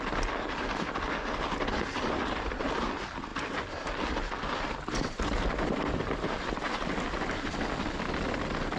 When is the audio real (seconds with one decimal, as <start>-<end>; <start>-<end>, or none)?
0.0-8.8